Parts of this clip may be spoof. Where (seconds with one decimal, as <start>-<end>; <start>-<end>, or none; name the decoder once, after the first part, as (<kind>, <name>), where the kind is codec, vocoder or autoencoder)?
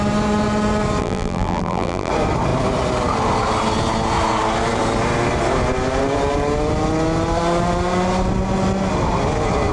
1.0-2.1 (vocoder, BigVGAN v2)